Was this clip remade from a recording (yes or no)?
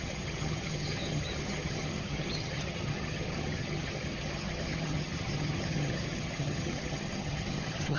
yes